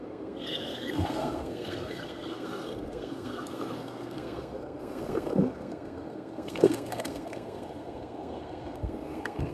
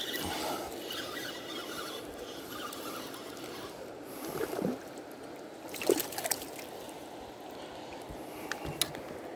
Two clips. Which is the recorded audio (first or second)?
second